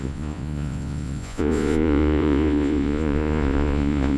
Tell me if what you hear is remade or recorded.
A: remade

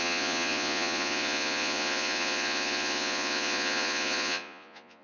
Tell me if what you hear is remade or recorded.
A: remade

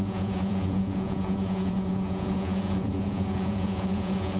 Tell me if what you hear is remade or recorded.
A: remade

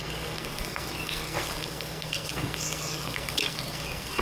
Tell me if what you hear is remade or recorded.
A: remade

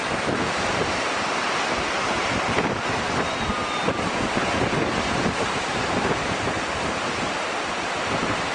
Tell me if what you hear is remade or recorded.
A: recorded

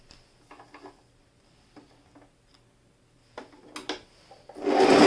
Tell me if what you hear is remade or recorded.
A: recorded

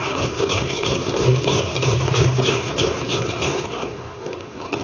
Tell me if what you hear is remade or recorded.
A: remade